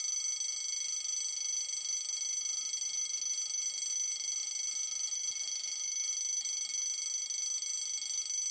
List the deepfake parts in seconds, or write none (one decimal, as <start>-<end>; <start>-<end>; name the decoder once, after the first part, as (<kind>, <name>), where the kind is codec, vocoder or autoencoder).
4.4-6.1 (vocoder, BigVGAN v2)